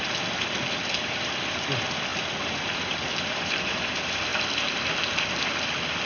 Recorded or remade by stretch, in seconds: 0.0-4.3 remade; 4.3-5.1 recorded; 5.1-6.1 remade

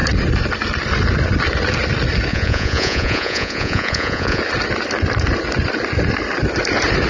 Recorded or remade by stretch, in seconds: 0.0-2.3 recorded; 2.3-4.4 remade; 4.4-7.1 recorded